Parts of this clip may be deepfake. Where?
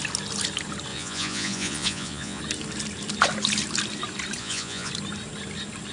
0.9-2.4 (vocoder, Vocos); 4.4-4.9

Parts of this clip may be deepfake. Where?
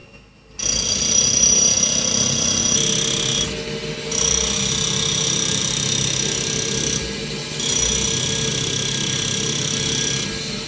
2.1-2.6 (vocoder, BigVGAN v2); 5.6-7.4; 8.5-10.7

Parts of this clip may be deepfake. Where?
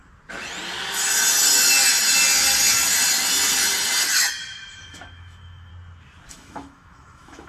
4.5-5.7 (autoencoder, DAC-VAE); 6.3-7.5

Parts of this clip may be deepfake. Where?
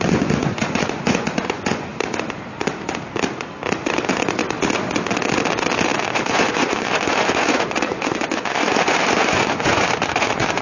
0.0-1.9 (vocoder, Vocos); 6.0-10.6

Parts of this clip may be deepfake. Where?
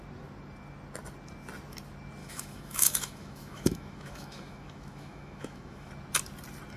2.2-5.9 (autoencoder, DAC-VAE)